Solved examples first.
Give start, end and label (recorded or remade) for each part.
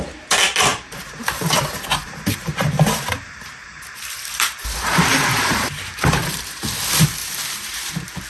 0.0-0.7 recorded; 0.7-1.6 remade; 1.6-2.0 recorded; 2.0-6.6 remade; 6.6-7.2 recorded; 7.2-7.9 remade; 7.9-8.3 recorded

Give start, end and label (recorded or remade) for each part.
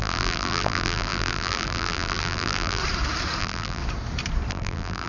0.0-2.8 remade; 2.8-3.4 recorded; 3.4-3.8 remade; 3.8-4.5 recorded; 4.5-5.1 remade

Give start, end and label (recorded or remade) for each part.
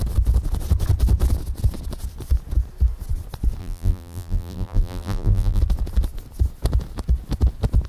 0.0-3.6 recorded; 3.6-5.6 remade; 5.6-7.9 recorded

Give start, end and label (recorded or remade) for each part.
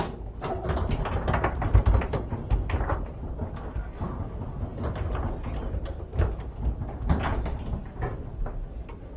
0.0-9.2 recorded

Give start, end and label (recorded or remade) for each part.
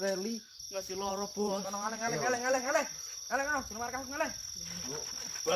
0.0-0.5 recorded; 0.5-3.3 remade; 3.3-5.6 recorded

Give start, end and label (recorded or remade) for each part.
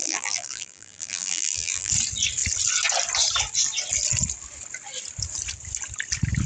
0.0-1.9 remade; 1.9-6.5 recorded